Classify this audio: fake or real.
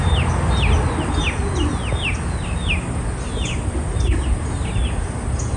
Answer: real